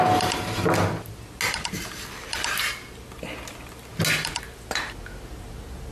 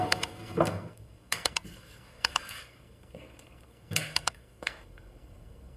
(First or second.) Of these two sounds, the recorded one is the first